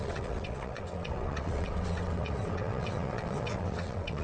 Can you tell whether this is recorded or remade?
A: remade